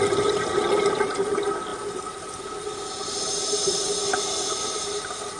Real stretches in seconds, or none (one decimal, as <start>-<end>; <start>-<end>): 0.6-1.7; 4.3-5.4